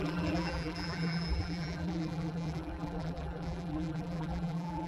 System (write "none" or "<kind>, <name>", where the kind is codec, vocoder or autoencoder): vocoder, BigVGAN v2